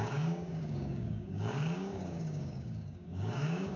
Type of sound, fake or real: fake